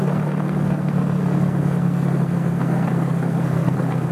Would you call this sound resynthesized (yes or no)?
yes